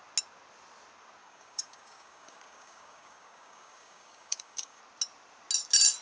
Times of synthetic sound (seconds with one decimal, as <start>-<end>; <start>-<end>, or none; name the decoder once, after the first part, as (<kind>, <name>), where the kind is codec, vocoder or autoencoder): 1.2-4.8 (codec, DAC)